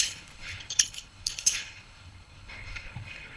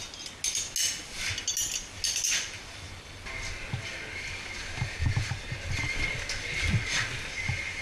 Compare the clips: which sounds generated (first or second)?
first